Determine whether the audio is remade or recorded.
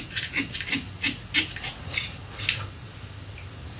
recorded